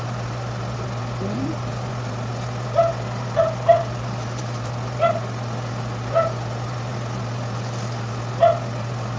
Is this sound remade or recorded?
recorded